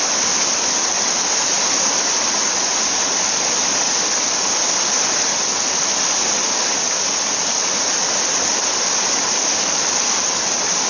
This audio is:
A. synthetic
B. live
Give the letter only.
B